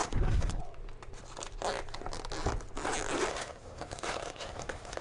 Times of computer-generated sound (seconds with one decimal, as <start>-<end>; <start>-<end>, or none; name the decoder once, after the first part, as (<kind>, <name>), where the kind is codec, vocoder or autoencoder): 0.0-0.6 (codec, SNAC); 3.3-5.0